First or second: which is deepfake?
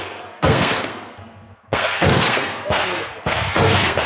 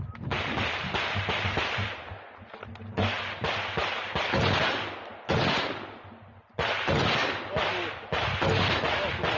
first